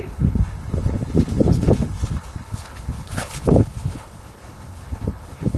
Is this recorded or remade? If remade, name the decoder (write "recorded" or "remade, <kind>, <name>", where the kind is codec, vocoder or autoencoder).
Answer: remade, codec, HILCodec